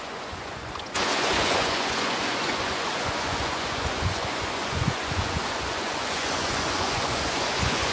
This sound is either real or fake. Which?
fake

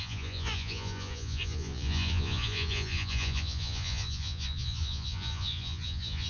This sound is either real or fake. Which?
fake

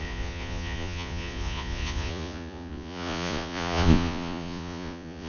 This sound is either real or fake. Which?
fake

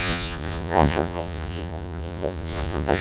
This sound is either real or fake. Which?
fake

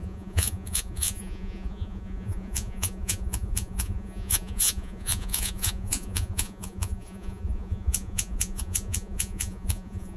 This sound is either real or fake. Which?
fake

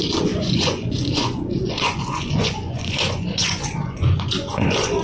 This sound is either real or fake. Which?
fake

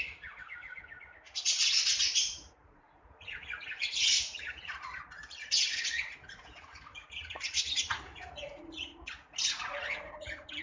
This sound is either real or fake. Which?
fake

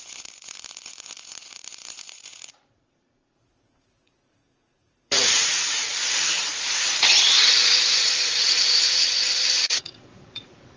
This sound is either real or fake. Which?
fake